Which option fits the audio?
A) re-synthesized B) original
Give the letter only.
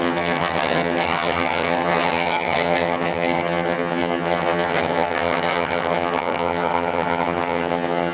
A